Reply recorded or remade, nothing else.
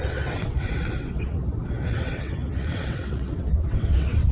remade